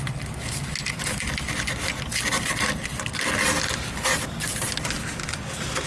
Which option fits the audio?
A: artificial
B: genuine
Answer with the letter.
B